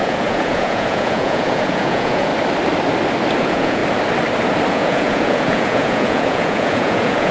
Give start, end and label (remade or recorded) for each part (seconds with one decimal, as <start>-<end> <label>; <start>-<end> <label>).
0.0-2.3 remade; 2.3-3.4 recorded; 3.4-3.8 remade; 3.8-4.7 recorded; 4.7-7.3 remade